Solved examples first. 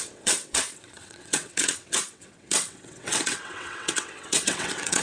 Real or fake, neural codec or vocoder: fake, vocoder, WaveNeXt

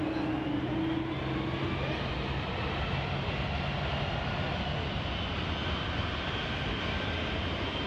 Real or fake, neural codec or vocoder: real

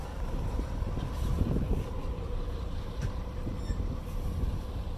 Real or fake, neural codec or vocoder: fake, vocoder, BigVGAN v2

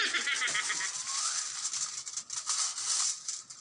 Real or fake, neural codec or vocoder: real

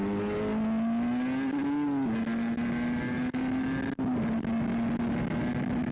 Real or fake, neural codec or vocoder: real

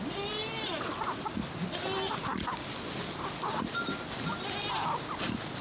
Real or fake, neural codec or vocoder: real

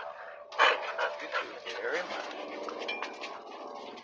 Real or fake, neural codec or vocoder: fake, vocoder, BigVGAN v2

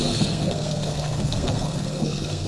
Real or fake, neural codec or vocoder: fake, codec, SNAC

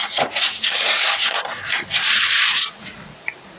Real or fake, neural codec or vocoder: fake, vocoder, Vocos